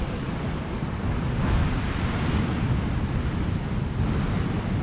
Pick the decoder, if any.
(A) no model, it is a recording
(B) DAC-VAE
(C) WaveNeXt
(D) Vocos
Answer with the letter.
A